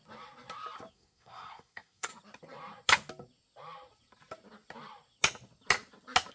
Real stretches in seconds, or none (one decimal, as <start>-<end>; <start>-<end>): 0.0-0.9; 2.1-6.3